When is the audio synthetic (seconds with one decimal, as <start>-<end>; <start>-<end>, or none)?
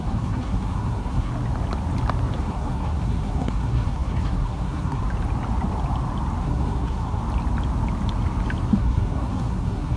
0.0-1.3; 2.4-5.0; 6.4-7.2; 8.7-10.0